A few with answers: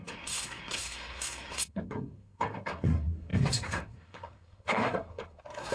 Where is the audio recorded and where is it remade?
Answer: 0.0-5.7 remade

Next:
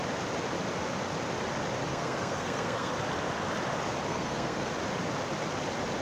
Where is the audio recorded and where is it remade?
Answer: 0.0-1.9 recorded; 1.9-2.9 remade; 2.9-4.1 recorded; 4.1-4.7 remade; 4.7-6.0 recorded

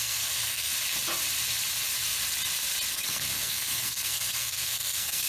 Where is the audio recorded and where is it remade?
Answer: 0.0-0.7 remade; 0.7-2.9 recorded; 2.9-5.3 remade

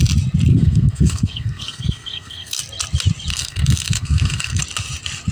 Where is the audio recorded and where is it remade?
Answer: 0.0-0.5 recorded; 0.5-2.6 remade; 2.6-3.3 recorded; 3.3-4.6 remade; 4.6-5.3 recorded

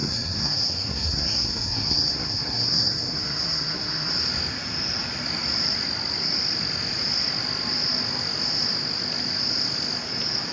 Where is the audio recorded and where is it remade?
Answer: 0.0-4.1 remade; 4.1-10.5 recorded

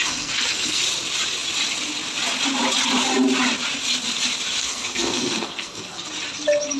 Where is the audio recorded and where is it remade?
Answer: 0.0-0.8 remade; 0.8-4.6 recorded; 4.6-6.1 remade; 6.1-6.8 recorded

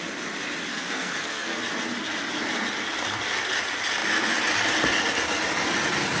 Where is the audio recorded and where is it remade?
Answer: 0.0-0.7 recorded; 0.7-1.6 remade; 1.6-6.2 recorded